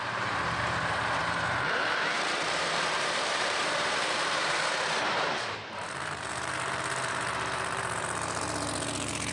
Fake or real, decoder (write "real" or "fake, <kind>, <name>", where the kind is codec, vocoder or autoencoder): fake, vocoder, BigVGAN v2